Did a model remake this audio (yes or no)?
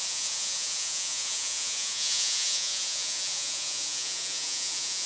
yes